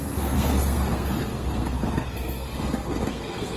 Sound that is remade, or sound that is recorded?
remade